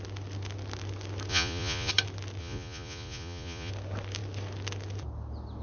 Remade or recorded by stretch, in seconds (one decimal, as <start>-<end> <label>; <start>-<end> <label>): 0.0-1.3 recorded; 1.3-1.9 remade; 1.9-2.4 recorded; 2.4-3.7 remade; 3.7-5.6 recorded